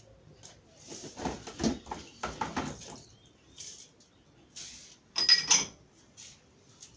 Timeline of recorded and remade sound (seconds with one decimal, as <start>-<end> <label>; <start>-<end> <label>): 0.0-0.7 recorded; 0.7-1.5 remade; 1.5-2.5 recorded; 2.5-4.0 remade; 4.0-7.0 recorded